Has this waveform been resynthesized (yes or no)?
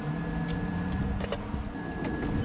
no